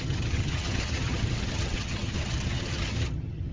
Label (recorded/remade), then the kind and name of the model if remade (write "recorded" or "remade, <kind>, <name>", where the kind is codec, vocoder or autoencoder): remade, vocoder, HiFi-GAN